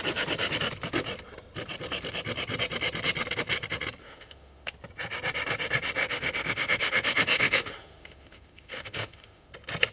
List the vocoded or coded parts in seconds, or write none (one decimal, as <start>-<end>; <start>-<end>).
4.0-4.7; 6.0-9.5